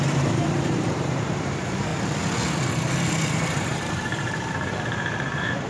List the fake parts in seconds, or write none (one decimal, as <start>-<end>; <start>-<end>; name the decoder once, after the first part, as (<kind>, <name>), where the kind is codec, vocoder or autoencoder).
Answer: 0.0-1.9 (vocoder, BigVGAN v2); 3.3-5.7